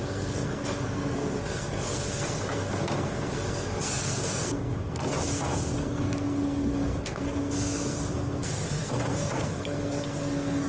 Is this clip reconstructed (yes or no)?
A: yes